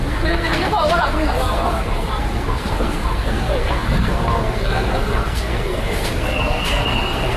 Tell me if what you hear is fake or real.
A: fake